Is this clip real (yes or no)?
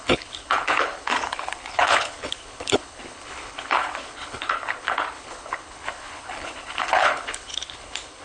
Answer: no